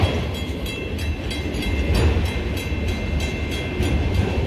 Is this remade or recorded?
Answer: recorded